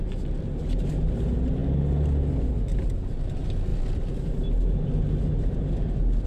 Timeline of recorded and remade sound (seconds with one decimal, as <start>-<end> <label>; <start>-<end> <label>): 0.0-6.3 recorded